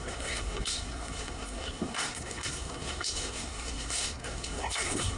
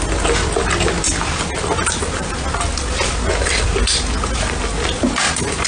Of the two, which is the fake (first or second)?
first